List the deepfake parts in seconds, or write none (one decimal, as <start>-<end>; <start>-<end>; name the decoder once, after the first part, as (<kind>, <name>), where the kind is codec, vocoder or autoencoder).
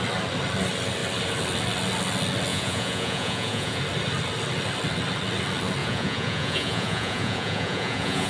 2.5-3.8 (vocoder, Vocos); 5.8-8.3